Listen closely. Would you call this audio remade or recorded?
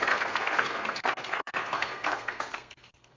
remade